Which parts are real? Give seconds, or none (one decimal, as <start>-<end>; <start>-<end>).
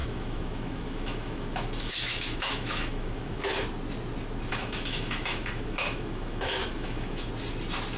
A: 3.5-4.5; 7.3-8.0